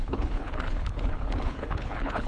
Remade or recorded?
remade